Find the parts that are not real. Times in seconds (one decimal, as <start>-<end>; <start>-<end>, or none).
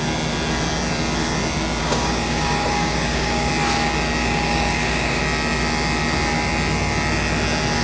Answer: 1.8-3.5; 4.2-5.2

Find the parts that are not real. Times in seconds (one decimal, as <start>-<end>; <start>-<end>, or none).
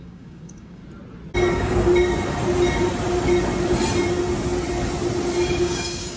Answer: 0.0-0.8; 1.5-1.9; 5.6-6.2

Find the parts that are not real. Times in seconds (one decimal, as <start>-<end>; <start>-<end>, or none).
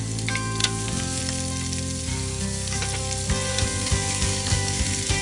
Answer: 0.6-1.2; 2.1-2.8; 3.5-4.8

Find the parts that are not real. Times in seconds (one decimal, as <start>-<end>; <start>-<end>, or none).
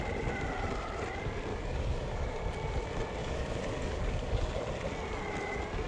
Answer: 1.5-2.4; 3.2-4.6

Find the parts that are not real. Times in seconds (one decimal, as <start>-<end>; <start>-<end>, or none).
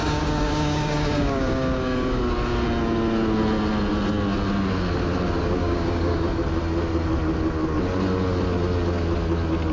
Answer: 0.0-2.2; 5.6-6.3